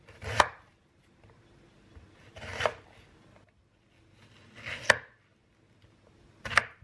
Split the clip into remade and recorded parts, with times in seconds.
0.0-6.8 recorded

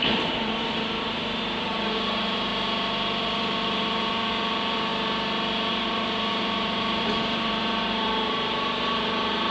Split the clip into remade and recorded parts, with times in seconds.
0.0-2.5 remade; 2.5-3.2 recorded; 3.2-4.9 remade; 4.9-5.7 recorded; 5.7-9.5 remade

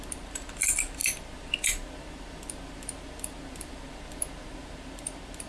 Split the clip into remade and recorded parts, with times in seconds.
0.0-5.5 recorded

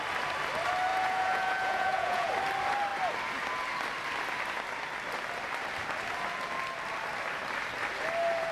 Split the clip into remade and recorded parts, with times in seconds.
0.0-0.9 recorded; 0.9-2.3 remade; 2.3-8.5 recorded

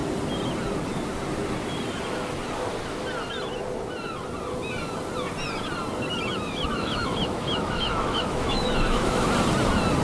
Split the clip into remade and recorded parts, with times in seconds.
0.0-6.7 recorded; 6.7-9.3 remade; 9.3-10.0 recorded

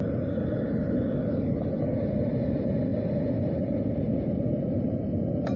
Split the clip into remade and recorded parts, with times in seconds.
0.0-5.6 recorded

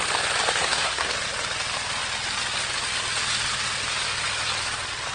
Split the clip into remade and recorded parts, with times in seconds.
0.0-0.6 recorded; 0.6-1.1 remade; 1.1-5.1 recorded

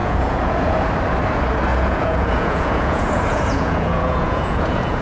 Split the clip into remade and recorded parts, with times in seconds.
0.0-0.9 remade; 0.9-1.7 recorded; 1.7-5.0 remade